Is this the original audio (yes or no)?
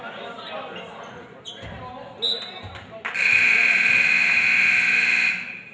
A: yes